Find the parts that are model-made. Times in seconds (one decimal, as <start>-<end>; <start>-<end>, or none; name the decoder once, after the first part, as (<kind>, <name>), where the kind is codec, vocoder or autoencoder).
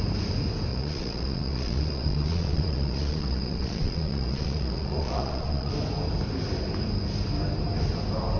0.7-5.7 (vocoder, Vocos)